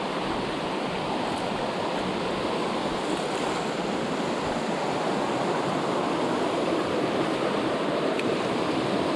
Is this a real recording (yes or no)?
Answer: yes